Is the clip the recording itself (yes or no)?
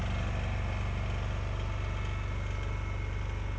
yes